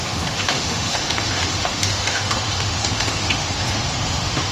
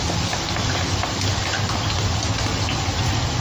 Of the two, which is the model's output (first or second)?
first